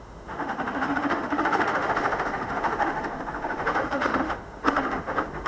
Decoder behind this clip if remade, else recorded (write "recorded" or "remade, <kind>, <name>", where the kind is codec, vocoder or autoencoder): remade, autoencoder, DAC-VAE